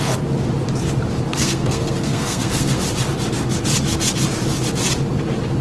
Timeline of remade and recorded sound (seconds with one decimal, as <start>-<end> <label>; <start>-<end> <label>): 0.0-1.3 recorded; 1.3-2.8 remade; 2.8-5.6 recorded